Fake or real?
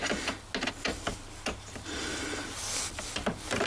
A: real